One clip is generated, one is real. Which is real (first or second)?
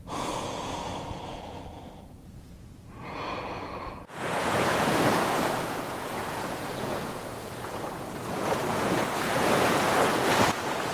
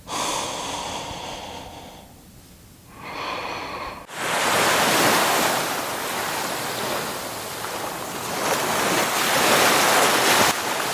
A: second